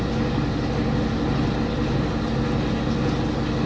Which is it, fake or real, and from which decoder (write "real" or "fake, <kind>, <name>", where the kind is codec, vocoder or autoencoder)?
real